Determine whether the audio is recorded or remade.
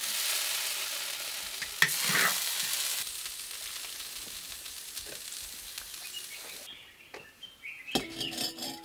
recorded